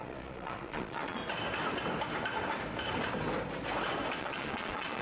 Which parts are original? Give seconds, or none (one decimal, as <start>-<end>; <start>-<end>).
1.2-4.2